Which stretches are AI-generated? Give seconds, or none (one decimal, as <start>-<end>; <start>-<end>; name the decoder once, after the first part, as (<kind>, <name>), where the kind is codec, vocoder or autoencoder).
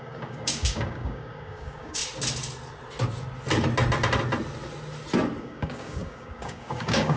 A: 0.0-2.0 (codec, DAC); 5.4-7.2